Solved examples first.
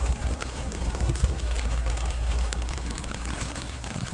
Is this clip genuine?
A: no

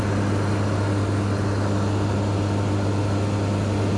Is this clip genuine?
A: yes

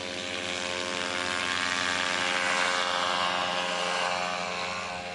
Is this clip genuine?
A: yes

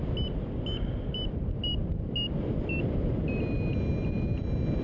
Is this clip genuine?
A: yes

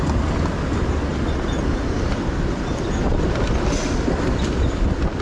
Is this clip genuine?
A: yes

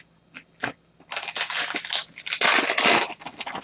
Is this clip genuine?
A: yes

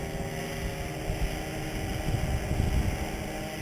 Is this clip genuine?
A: yes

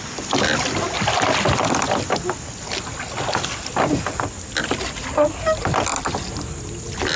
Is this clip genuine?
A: yes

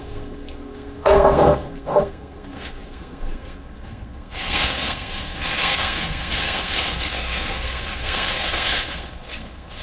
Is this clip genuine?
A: no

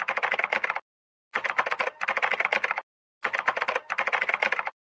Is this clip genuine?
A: yes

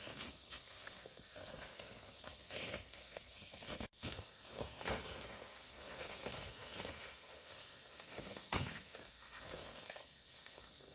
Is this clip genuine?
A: no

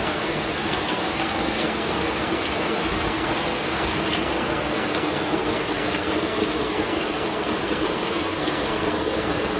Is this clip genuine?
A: no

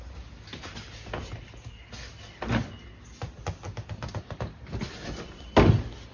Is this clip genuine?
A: yes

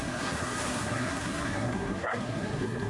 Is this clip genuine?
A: no